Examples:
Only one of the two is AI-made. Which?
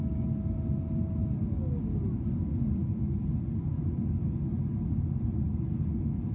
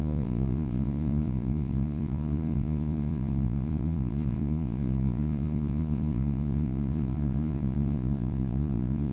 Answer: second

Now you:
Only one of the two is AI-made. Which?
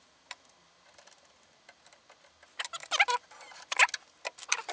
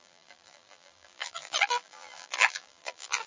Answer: second